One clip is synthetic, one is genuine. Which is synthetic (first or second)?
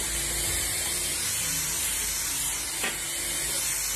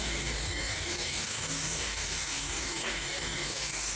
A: second